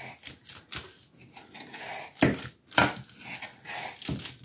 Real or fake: real